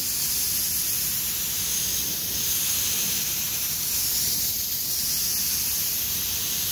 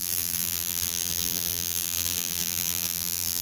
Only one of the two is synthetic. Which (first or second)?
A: second